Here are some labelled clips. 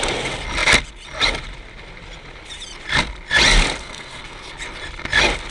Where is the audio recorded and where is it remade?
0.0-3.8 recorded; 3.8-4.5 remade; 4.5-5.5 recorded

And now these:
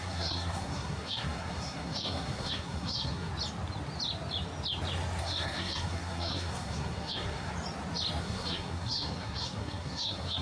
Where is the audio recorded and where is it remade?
0.0-3.3 remade; 3.3-5.2 recorded; 5.2-7.5 remade; 7.5-8.2 recorded; 8.2-10.4 remade

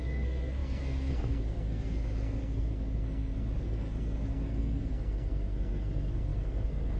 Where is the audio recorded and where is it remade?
0.0-7.0 remade

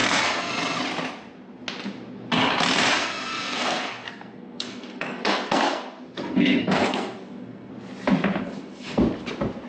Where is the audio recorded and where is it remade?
0.0-0.5 remade; 0.5-3.0 recorded; 3.0-7.7 remade; 7.7-8.4 recorded; 8.4-9.0 remade; 9.0-9.7 recorded